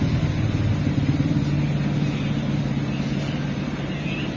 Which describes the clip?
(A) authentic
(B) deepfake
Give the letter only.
A